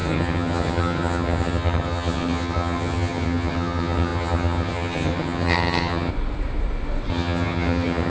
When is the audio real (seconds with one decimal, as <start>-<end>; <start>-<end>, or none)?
6.1-7.1